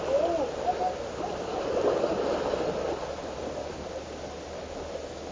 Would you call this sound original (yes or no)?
yes